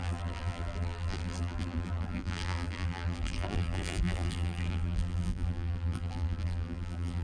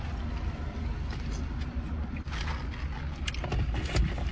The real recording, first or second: second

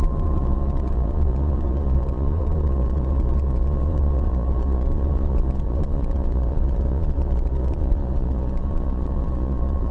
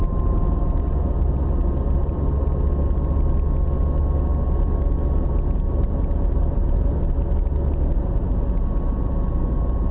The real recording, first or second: second